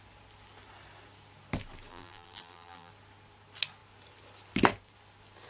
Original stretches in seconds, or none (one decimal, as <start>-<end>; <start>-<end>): 0.0-1.9; 2.9-5.5